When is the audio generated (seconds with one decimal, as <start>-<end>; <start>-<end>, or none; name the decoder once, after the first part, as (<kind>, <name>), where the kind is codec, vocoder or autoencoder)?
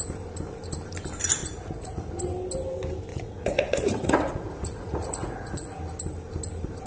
1.4-2.1 (vocoder, Vocos); 3.1-5.8